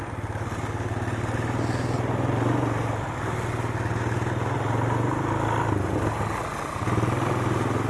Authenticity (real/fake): real